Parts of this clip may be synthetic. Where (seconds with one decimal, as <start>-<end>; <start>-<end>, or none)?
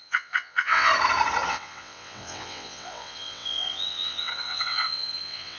0.0-0.9; 1.5-5.6